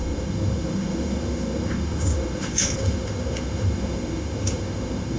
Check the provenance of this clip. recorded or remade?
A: remade